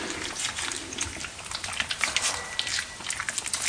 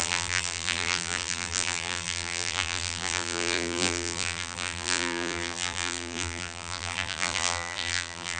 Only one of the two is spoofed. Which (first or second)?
second